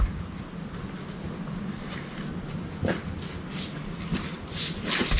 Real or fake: real